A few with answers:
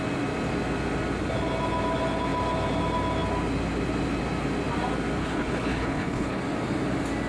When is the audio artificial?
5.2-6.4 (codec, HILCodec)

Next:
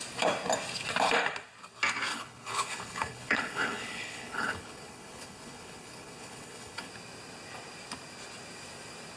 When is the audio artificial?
2.1-6.9 (codec, HILCodec)

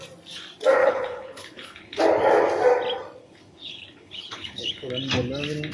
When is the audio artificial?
0.8-2.0 (codec, HILCodec); 3.2-4.9

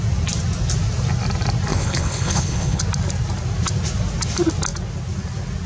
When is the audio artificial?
1.7-2.8 (codec, HILCodec)

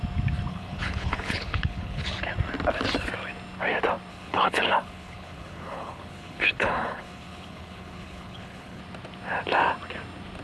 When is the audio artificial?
0.5-2.1 (codec, HILCodec); 4.1-8.8